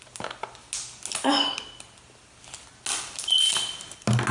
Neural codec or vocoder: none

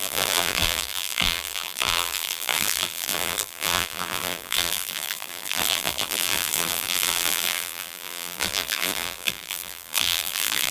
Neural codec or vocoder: vocoder, BigVGAN v2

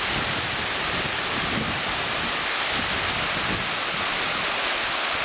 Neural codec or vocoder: none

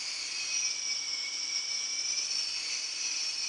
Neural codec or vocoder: none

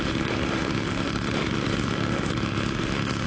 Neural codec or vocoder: autoencoder, DAC-VAE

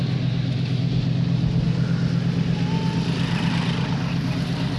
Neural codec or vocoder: none